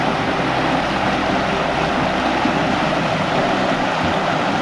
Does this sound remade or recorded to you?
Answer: recorded